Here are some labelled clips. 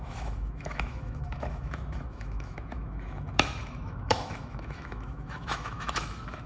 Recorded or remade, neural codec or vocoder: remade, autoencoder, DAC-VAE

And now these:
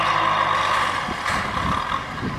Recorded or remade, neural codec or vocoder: recorded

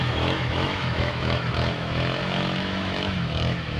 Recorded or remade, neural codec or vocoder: remade, autoencoder, DAC-VAE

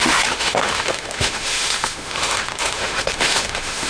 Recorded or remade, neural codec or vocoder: remade, autoencoder, DAC-VAE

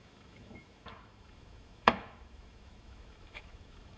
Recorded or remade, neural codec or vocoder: remade, autoencoder, DAC-VAE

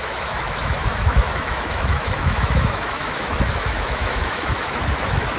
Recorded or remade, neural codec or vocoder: remade, autoencoder, DAC-VAE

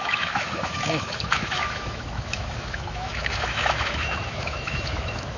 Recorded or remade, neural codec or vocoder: remade, autoencoder, DAC-VAE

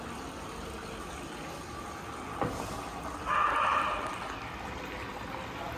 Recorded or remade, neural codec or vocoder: recorded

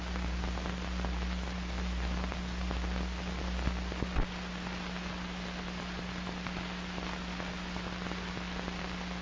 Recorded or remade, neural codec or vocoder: recorded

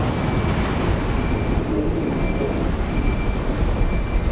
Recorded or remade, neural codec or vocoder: recorded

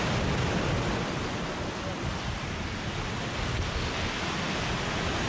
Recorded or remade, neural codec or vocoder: recorded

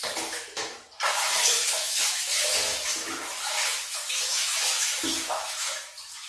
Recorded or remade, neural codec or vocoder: remade, autoencoder, DAC-VAE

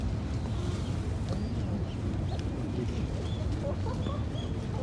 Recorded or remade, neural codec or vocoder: recorded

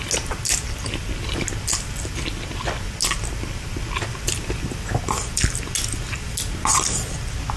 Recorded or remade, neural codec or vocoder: recorded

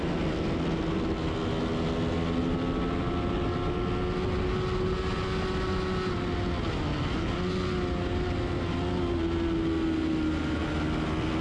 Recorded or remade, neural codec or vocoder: recorded